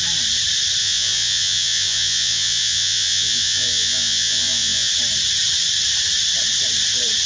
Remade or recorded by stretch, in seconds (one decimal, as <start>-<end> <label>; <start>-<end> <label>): 0.0-0.8 recorded; 0.8-4.9 remade; 4.9-7.3 recorded